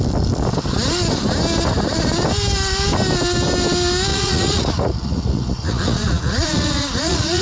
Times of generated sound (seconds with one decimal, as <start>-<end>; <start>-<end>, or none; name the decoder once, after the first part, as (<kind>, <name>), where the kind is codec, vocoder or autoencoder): 4.1-7.4 (vocoder, Vocos)